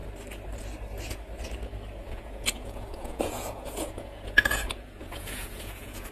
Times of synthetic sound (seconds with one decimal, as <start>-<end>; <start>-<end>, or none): 2.0-6.1